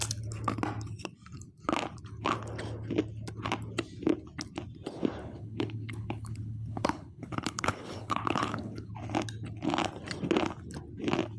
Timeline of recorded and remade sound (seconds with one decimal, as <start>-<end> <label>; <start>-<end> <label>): 0.0-5.2 recorded; 5.2-8.9 remade; 8.9-11.4 recorded